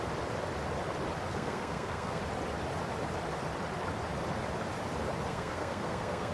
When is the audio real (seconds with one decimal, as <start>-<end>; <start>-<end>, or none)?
0.0-1.3; 2.2-5.3